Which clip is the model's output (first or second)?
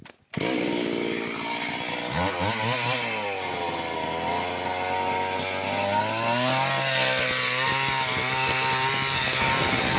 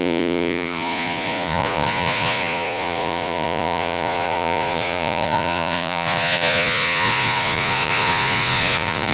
second